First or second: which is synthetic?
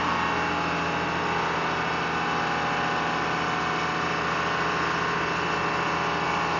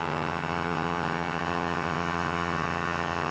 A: second